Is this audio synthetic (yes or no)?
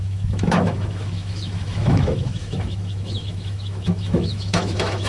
yes